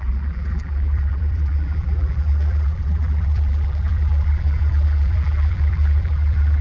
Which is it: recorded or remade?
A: remade